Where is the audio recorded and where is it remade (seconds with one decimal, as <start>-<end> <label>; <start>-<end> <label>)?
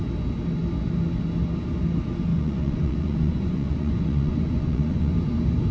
0.0-2.3 recorded; 2.3-5.1 remade; 5.1-5.7 recorded